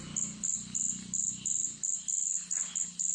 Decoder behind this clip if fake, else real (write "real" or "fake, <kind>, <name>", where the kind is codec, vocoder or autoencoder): real